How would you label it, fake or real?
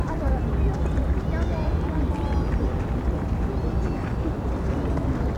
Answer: real